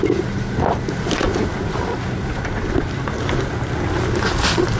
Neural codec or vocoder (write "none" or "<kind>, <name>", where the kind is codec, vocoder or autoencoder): none